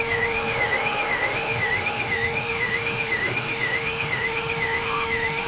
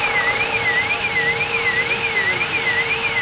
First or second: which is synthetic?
first